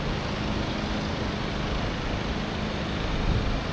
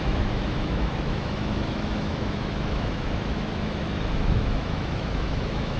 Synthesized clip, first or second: second